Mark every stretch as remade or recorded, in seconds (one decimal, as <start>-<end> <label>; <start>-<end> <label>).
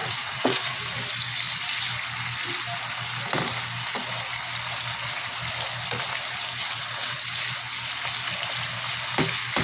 0.0-0.8 remade; 0.8-6.6 recorded; 6.6-7.2 remade; 7.2-9.6 recorded